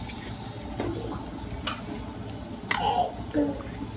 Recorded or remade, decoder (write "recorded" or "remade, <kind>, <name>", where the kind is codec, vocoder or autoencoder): recorded